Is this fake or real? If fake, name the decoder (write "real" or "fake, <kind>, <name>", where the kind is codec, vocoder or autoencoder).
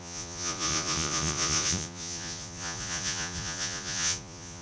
fake, vocoder, Vocos